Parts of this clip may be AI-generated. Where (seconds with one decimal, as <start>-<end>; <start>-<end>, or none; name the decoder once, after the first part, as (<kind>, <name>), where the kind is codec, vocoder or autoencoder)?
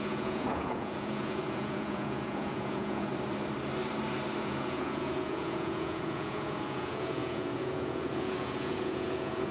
0.0-3.1 (vocoder, Vocos); 4.4-9.5